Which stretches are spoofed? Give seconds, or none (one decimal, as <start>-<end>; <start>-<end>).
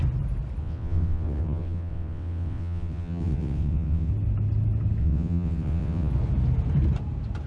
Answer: 0.6-4.1; 5.0-6.1